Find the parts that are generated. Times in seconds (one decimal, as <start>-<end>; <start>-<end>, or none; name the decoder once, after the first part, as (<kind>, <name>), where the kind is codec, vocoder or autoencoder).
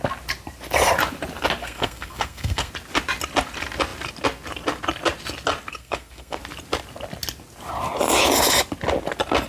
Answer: 1.6-2.7 (codec, SNAC); 5.7-6.4